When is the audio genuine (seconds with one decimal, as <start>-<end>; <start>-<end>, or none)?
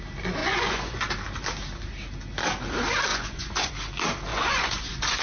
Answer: 0.0-0.4; 1.1-3.1; 3.7-4.3